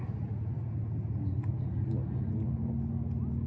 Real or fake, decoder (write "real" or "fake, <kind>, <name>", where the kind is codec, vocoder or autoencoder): real